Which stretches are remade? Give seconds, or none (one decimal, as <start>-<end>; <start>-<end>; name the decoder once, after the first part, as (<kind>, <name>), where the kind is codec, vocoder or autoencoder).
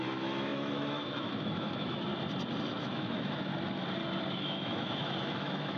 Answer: 0.0-2.1 (autoencoder, DAC-VAE); 2.8-3.5; 4.3-5.8